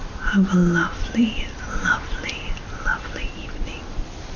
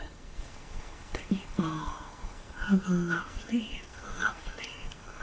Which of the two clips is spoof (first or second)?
second